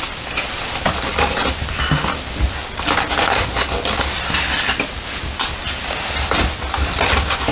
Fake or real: real